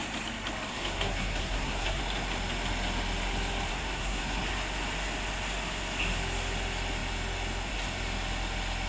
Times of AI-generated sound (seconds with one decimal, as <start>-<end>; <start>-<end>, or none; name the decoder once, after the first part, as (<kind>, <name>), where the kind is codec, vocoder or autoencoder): 0.7-2.0 (codec, SNAC); 3.7-4.4